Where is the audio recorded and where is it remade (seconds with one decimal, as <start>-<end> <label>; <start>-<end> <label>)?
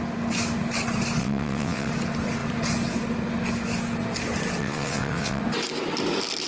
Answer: 0.0-1.2 recorded; 1.2-1.9 remade; 1.9-4.6 recorded; 4.6-5.4 remade; 5.4-6.5 recorded